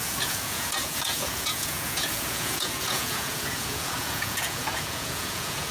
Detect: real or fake fake